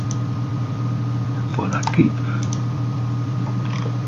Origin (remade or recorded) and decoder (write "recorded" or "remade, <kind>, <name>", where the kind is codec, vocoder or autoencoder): remade, vocoder, BigVGAN v2